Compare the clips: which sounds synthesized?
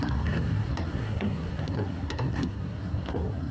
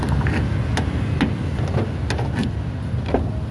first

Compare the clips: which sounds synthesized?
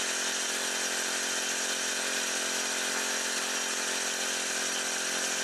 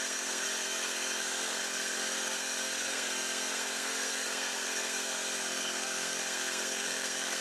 second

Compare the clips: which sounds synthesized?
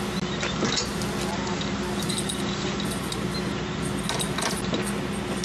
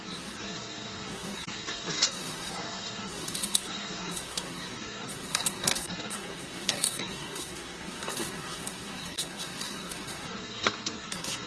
second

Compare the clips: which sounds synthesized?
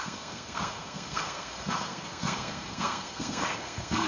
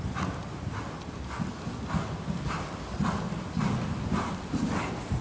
first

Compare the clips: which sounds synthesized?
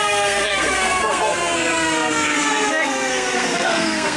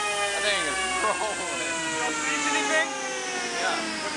first